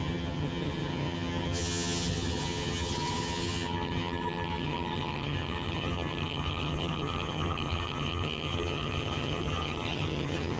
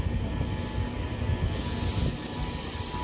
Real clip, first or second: second